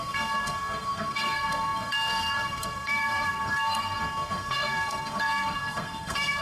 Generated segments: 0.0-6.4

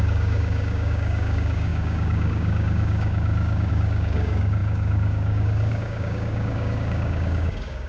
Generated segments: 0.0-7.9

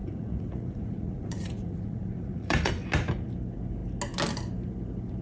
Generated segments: 0.0-2.7

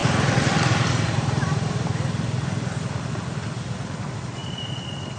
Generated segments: 0.0-3.1; 4.4-5.2

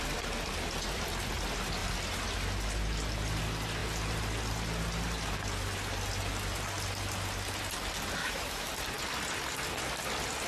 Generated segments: 8.2-8.7

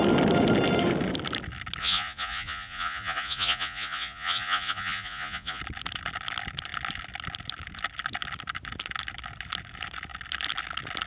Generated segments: 1.8-5.6

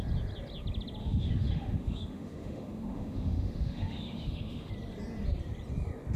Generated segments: 1.0-4.7

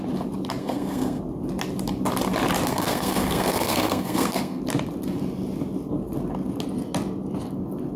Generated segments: 0.6-1.2; 2.7-4.6